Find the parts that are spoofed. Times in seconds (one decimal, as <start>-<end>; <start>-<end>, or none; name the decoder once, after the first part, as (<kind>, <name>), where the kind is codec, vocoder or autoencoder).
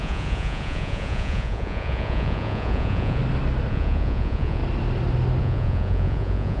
0.0-3.2 (vocoder, Vocos); 3.7-4.6; 5.4-6.6